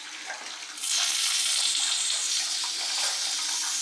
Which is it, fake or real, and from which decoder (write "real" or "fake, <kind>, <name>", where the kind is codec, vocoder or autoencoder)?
real